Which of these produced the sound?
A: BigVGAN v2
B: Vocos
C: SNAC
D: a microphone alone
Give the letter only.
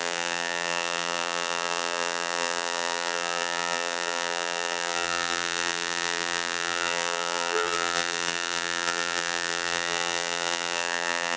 A